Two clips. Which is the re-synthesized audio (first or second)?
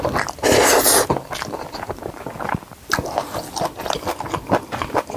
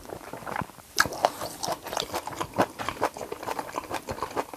second